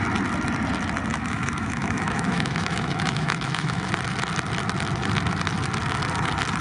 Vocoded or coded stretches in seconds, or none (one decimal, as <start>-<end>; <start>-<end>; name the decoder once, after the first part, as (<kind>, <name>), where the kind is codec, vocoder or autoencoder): 1.1-3.9 (autoencoder, DAC-VAE)